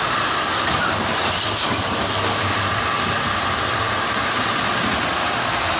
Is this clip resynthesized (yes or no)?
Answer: yes